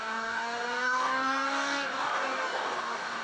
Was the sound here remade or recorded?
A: remade